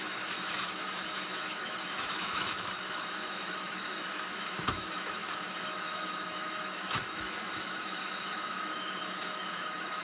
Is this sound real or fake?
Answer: fake